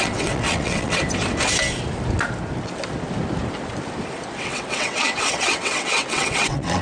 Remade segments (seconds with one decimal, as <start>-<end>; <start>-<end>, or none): 0.0-1.0; 4.4-6.8